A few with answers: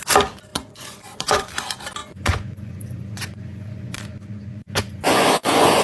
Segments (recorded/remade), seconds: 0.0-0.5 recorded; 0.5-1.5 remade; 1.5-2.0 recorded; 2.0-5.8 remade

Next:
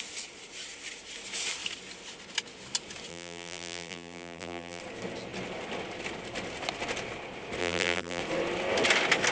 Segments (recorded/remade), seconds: 0.0-3.1 recorded; 3.1-4.8 remade; 4.8-7.6 recorded; 7.6-8.2 remade; 8.2-9.3 recorded